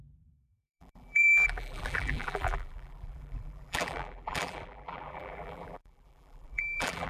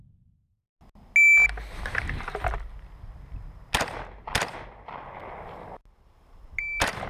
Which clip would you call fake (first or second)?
first